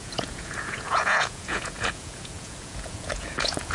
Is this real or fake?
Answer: fake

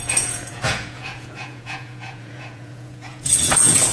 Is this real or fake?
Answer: fake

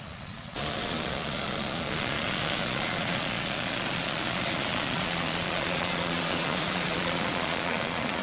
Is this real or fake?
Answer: fake